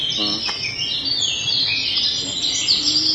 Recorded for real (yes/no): yes